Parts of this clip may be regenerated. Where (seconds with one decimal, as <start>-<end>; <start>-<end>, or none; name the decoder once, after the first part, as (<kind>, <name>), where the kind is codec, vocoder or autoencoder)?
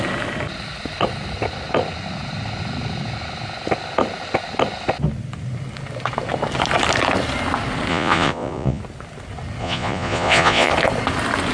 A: 7.9-8.8 (vocoder, Vocos); 9.6-10.7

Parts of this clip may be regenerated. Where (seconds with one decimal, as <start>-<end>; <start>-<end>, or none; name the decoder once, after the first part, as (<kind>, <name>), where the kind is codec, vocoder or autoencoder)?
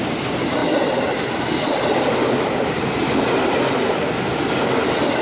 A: none